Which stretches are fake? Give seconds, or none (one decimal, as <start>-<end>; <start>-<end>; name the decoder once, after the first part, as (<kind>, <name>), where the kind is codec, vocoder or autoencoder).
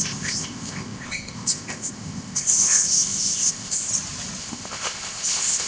0.0-3.9 (codec, ZipCodec); 4.4-5.7